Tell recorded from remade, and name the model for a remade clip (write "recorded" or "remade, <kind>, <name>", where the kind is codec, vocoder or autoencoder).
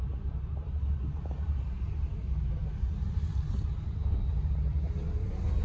recorded